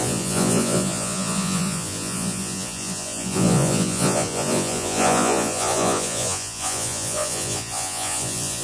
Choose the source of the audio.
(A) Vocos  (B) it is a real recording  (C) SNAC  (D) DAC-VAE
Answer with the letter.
A